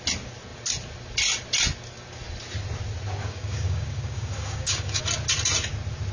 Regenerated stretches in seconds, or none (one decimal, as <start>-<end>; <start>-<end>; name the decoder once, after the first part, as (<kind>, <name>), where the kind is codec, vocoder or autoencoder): 3.2-5.0 (codec, DAC)